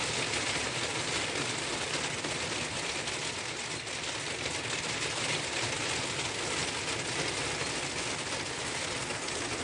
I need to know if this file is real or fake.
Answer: real